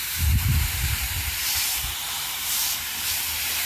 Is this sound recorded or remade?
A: remade